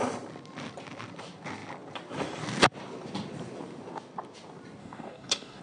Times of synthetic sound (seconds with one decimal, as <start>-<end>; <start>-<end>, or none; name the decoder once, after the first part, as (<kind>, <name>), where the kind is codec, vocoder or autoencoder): 4.8-5.6 (codec, DAC)

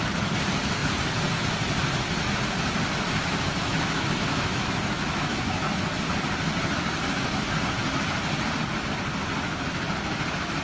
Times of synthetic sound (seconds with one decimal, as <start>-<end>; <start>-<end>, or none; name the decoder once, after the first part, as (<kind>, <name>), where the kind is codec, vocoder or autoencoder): 2.9-5.8 (autoencoder, DAC-VAE)

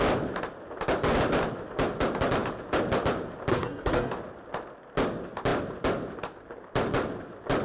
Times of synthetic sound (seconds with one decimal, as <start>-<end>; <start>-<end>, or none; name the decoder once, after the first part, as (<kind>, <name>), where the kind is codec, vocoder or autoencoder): 3.5-4.1 (codec, SNAC)